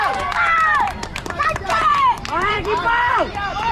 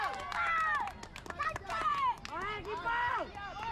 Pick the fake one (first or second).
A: first